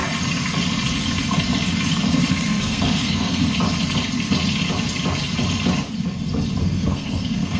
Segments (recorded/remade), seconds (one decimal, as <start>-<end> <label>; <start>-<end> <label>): 0.0-2.3 recorded; 2.3-3.4 remade; 3.4-6.6 recorded; 6.6-7.6 remade